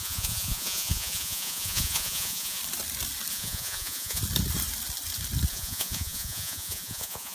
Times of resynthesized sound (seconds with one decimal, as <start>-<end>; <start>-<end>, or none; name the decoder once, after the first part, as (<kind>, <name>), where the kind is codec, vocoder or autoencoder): 0.0-2.6 (vocoder, Vocos); 3.3-4.2; 5.5-7.3